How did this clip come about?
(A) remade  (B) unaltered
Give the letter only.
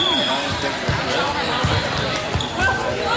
B